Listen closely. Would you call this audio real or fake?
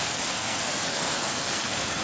fake